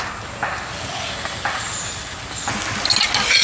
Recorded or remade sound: recorded